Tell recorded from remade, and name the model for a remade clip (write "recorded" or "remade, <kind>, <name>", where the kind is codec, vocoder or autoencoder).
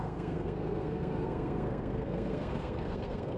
remade, codec, SNAC